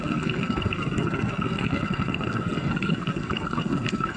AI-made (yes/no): yes